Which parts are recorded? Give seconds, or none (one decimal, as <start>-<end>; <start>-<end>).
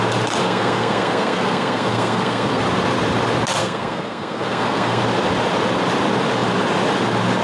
0.0-0.4; 2.6-3.6; 5.0-7.4